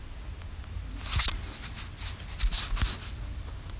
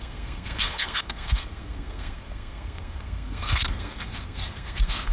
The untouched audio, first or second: first